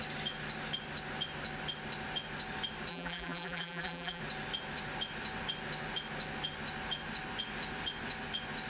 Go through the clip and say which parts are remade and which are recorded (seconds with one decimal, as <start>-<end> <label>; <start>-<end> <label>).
0.0-2.9 recorded; 2.9-4.2 remade; 4.2-8.7 recorded